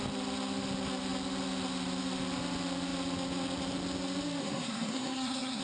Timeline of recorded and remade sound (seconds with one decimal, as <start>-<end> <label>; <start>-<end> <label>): 0.0-4.4 recorded; 4.4-5.6 remade